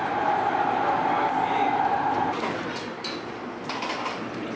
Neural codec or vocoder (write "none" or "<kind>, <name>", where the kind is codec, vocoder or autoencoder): none